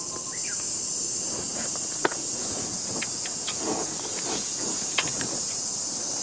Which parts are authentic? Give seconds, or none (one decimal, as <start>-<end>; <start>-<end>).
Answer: 0.0-2.0; 5.7-6.2